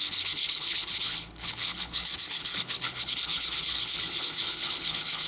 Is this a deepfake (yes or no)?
yes